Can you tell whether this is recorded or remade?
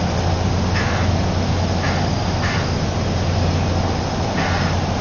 recorded